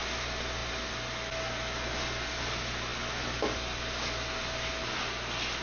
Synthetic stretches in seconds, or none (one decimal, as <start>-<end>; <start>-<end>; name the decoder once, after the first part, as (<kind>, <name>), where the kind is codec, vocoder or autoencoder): none